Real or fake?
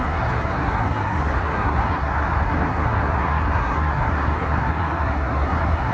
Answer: fake